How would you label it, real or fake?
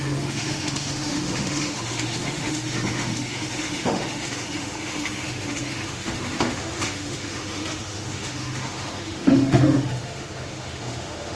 fake